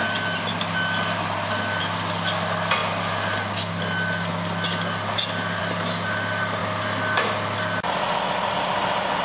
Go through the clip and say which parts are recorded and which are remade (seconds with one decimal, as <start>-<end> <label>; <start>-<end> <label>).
0.0-9.2 recorded